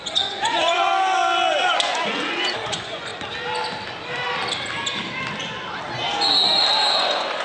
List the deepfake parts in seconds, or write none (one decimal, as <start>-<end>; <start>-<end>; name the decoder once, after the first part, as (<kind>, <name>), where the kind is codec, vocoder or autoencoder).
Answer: 0.0-0.9 (vocoder, Vocos); 1.5-3.1; 6.9-7.4